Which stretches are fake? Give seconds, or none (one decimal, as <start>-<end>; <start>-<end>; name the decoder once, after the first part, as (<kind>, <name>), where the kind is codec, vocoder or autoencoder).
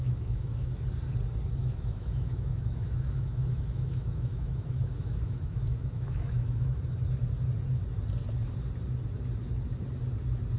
0.0-0.7 (autoencoder, DAC-VAE); 1.6-6.8